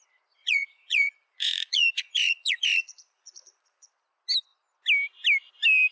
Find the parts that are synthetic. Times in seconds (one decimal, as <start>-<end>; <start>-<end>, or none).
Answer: 0.4-3.9